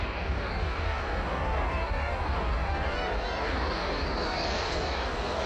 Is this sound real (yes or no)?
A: no